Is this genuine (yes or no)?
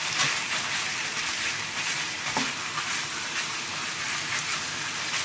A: yes